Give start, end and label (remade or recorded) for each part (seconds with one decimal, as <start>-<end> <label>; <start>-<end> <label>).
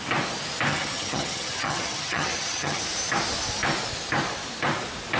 0.0-0.7 recorded; 0.7-2.8 remade; 2.8-5.2 recorded